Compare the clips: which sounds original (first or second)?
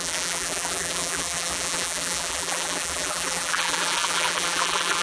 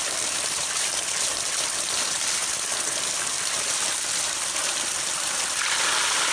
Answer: second